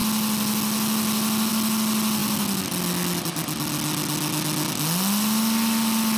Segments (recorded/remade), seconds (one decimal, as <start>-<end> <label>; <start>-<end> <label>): 0.0-6.2 recorded